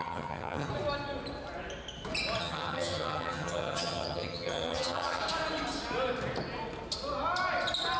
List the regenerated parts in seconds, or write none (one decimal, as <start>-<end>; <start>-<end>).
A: 0.0-0.7; 2.4-5.2